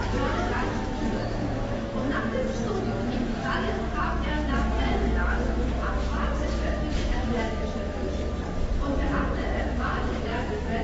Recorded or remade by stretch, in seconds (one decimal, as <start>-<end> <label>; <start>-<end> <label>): 0.0-2.4 remade; 2.4-3.2 recorded; 3.2-6.1 remade; 6.1-6.9 recorded; 6.9-8.0 remade; 8.0-9.6 recorded; 9.6-10.8 remade

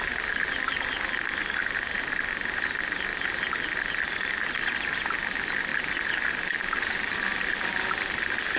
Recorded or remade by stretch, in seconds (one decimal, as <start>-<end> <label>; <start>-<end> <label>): 0.0-8.6 recorded

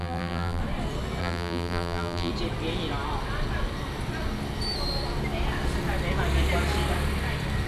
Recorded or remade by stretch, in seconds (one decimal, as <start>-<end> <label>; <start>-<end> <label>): 0.0-0.6 remade; 0.6-1.2 recorded; 1.2-2.3 remade; 2.3-7.7 recorded

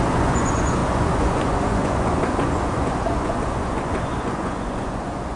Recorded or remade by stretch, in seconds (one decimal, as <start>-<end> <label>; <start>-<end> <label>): 0.0-5.4 remade

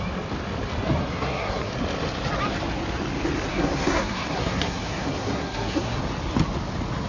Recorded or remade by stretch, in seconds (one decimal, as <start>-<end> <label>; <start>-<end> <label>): 0.0-1.0 recorded; 1.0-1.7 remade; 1.7-3.5 recorded; 3.5-6.0 remade; 6.0-7.1 recorded

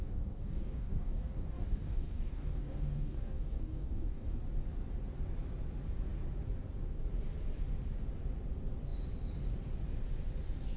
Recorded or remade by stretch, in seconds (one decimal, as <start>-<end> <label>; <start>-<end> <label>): 0.0-4.4 remade; 4.4-10.8 recorded

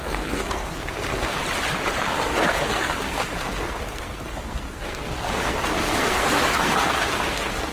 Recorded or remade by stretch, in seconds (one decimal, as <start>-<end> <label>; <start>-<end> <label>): 0.0-1.4 remade; 1.4-2.0 recorded; 2.0-7.7 remade